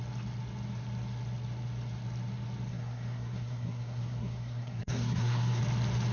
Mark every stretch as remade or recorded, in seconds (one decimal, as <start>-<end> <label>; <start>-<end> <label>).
0.0-2.7 recorded; 2.7-5.6 remade; 5.6-6.1 recorded